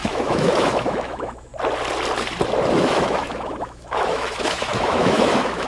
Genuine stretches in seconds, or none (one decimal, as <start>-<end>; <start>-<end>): 1.5-2.7